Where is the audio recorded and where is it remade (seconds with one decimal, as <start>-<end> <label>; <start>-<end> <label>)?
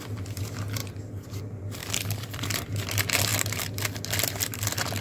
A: 0.0-0.8 recorded; 0.8-1.4 remade; 1.4-5.0 recorded